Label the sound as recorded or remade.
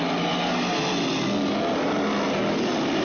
recorded